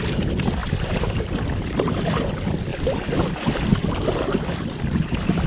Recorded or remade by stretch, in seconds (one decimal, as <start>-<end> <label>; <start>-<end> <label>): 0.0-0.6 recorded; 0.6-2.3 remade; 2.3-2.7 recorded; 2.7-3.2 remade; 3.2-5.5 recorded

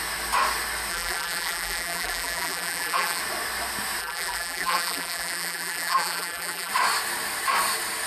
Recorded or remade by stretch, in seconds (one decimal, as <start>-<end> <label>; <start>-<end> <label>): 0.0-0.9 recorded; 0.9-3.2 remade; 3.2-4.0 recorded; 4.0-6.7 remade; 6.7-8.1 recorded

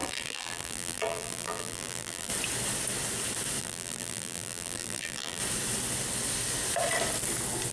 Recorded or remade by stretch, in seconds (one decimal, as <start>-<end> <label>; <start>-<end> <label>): 0.0-2.3 remade; 2.3-3.6 recorded; 3.6-5.4 remade; 5.4-7.7 recorded